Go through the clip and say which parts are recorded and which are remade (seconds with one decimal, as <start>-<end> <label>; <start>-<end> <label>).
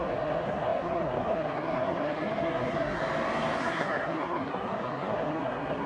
0.0-3.0 remade; 3.0-3.6 recorded; 3.6-5.9 remade